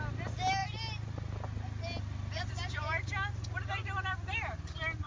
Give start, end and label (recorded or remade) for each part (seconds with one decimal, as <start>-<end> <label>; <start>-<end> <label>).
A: 0.0-5.1 recorded